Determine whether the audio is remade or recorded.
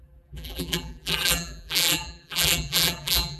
remade